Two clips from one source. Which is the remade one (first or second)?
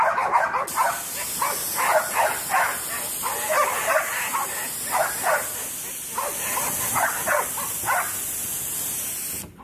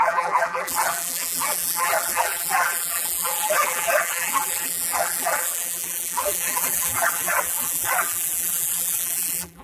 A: second